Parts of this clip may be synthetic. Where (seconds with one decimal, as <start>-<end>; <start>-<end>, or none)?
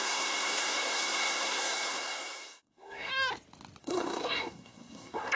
0.0-3.1; 3.8-5.4